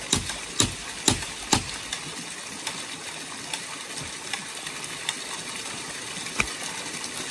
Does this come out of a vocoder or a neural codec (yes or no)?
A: no